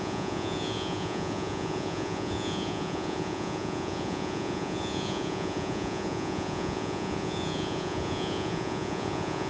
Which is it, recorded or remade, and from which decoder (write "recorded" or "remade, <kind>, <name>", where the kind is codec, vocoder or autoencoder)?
remade, vocoder, Vocos